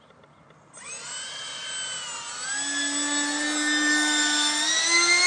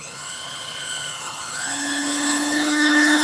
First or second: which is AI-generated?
second